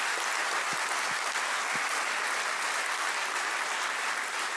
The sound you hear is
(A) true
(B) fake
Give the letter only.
A